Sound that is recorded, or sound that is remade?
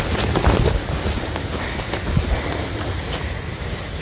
recorded